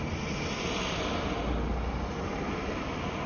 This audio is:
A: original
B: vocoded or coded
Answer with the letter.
A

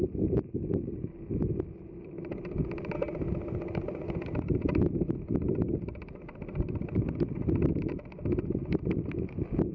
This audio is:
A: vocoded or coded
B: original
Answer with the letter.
B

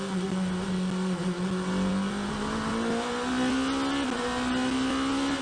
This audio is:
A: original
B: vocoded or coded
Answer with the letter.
A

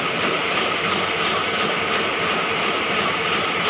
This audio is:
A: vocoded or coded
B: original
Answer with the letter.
B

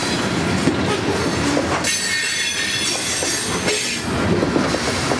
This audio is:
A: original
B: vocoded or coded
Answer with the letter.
A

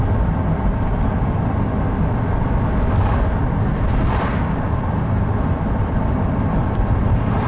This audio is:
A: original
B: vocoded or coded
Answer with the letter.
A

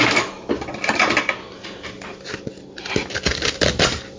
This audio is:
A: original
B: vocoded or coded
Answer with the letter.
A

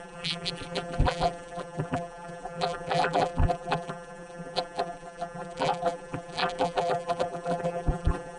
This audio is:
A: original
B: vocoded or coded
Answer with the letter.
B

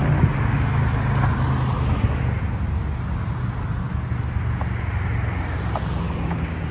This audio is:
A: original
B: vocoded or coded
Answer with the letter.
A